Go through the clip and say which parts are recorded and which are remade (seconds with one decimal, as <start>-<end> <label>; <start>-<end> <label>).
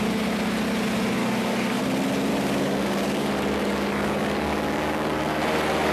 0.0-1.2 recorded; 1.2-1.8 remade; 1.8-2.3 recorded; 2.3-5.4 remade; 5.4-5.9 recorded